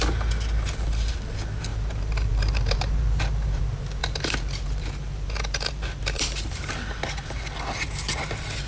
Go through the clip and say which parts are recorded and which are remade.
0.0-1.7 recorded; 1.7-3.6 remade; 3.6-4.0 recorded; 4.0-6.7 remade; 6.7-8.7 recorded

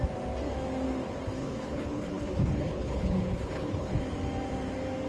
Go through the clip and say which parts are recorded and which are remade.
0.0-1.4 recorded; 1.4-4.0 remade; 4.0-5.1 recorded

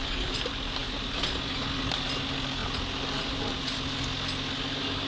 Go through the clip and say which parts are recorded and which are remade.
0.0-5.1 recorded

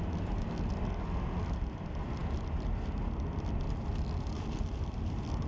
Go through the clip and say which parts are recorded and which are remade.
0.0-5.5 recorded

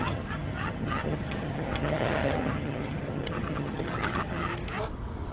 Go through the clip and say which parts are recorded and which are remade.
0.0-4.5 remade; 4.5-5.3 recorded

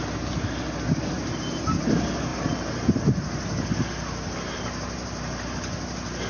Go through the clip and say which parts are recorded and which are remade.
0.0-6.3 recorded